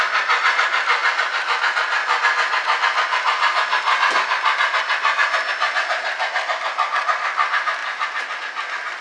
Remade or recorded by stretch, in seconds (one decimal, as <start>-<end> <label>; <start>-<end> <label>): 0.0-1.0 recorded; 1.0-1.6 remade; 1.6-7.8 recorded; 7.8-8.4 remade; 8.4-9.0 recorded